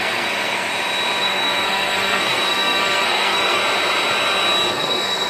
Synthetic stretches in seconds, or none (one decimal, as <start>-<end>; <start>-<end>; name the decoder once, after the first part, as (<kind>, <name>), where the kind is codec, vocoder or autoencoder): 0.0-0.7 (codec, SNAC); 1.2-3.6; 4.7-5.3